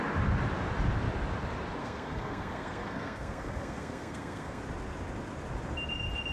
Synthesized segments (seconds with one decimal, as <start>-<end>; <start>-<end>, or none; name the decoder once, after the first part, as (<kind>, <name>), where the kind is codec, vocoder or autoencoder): 1.8-4.6 (codec, SNAC)